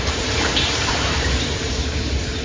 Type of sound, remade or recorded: remade